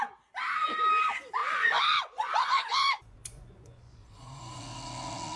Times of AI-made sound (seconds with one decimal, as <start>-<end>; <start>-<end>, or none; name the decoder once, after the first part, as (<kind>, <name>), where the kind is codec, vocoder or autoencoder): 1.4-4.6 (vocoder, Vocos)